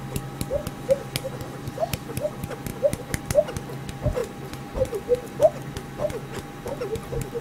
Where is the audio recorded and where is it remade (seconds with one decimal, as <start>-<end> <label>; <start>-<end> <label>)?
0.0-2.7 recorded; 2.7-3.2 remade; 3.2-7.4 recorded